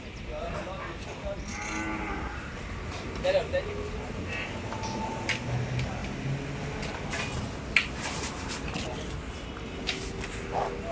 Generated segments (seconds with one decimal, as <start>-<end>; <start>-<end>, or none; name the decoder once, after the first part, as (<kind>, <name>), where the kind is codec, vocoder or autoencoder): none